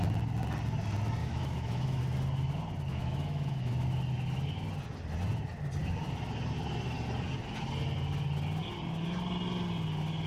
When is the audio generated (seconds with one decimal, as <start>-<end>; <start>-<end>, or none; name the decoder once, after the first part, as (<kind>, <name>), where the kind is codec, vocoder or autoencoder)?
1.2-2.0 (autoencoder, DAC-VAE); 2.9-3.7